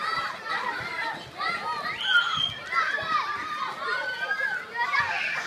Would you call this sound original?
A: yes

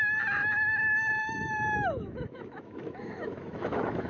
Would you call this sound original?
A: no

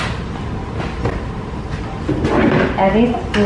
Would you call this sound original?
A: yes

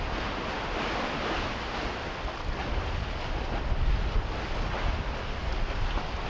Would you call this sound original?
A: yes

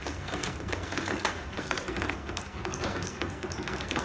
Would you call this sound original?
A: no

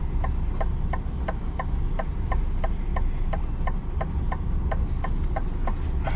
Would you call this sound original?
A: yes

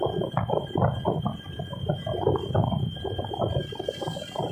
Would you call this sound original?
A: yes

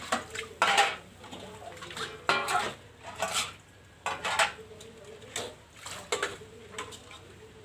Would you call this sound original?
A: yes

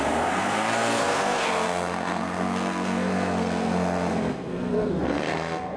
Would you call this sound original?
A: no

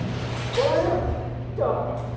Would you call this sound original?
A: yes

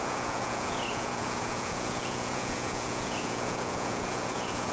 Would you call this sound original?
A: no